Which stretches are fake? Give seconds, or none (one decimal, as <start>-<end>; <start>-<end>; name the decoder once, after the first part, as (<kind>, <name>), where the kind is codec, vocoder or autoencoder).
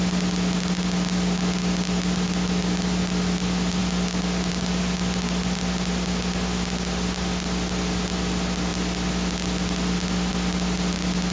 none